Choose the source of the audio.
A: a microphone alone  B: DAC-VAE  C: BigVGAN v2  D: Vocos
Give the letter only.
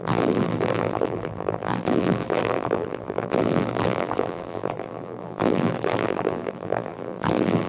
C